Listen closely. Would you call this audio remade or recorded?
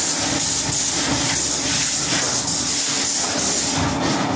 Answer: recorded